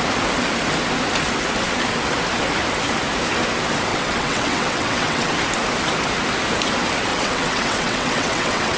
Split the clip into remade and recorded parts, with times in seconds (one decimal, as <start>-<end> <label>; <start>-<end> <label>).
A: 0.0-3.9 recorded; 3.9-5.3 remade; 5.3-7.1 recorded; 7.1-8.8 remade